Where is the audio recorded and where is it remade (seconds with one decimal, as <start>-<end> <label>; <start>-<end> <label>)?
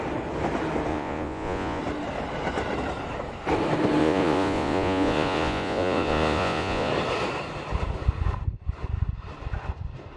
0.0-0.9 recorded; 0.9-1.8 remade; 1.8-4.0 recorded; 4.0-6.9 remade; 6.9-10.2 recorded